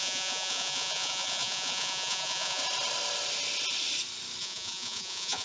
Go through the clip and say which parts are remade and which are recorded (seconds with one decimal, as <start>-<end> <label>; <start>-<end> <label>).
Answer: 0.0-2.6 remade; 2.6-4.4 recorded; 4.4-5.4 remade